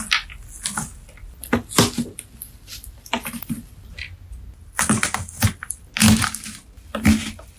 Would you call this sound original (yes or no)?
yes